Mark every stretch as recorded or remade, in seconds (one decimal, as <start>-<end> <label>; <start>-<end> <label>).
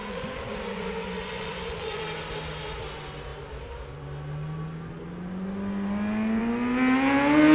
0.0-2.0 remade; 2.0-7.5 recorded